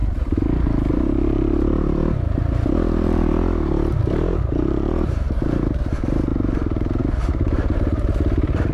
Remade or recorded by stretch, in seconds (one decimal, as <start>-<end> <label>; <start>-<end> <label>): 0.0-0.9 recorded; 0.9-2.0 remade; 2.0-4.0 recorded; 4.0-8.7 remade